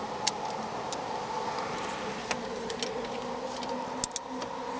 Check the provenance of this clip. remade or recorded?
recorded